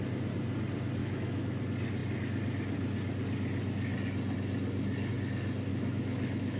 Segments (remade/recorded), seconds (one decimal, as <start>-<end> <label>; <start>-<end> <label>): 0.0-1.0 recorded; 1.0-1.6 remade; 1.6-5.7 recorded; 5.7-6.6 remade